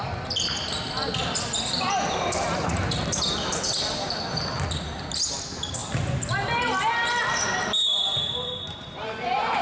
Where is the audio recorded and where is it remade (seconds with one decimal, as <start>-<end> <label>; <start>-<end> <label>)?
0.0-9.6 recorded